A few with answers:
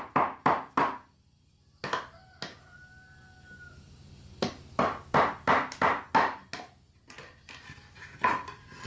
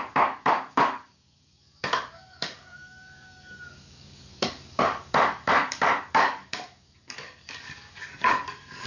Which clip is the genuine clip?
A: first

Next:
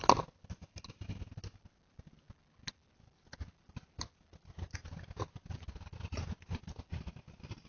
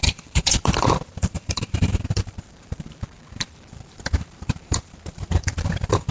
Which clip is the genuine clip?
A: first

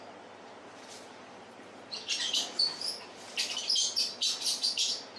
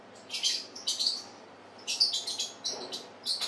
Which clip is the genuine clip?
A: second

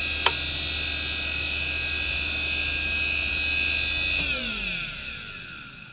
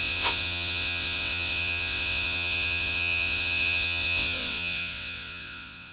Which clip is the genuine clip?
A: first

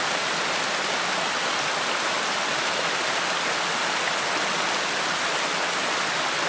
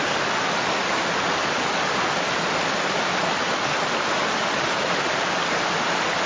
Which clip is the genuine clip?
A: first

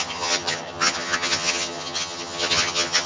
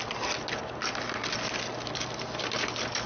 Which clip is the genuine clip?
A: second